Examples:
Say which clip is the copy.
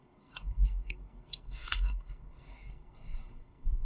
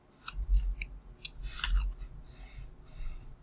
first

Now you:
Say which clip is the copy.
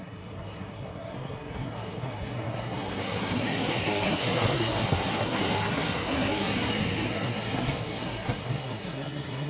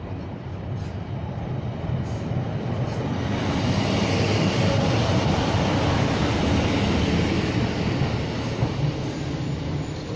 first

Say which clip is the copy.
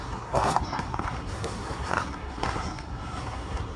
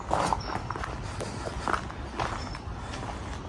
first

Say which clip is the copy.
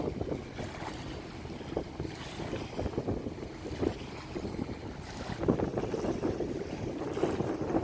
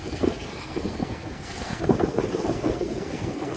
second